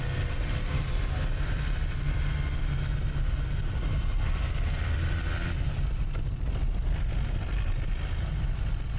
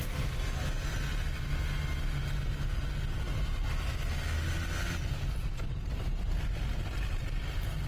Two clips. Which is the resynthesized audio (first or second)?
first